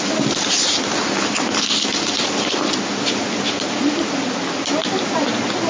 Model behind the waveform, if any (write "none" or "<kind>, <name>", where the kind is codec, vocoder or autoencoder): none